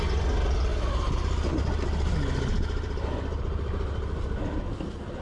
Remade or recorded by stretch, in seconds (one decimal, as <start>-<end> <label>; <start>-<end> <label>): 0.0-5.2 recorded